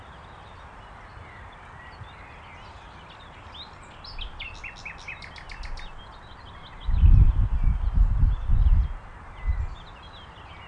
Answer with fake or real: real